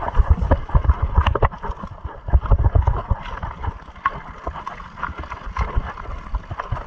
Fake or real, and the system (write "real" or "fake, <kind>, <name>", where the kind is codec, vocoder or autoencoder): real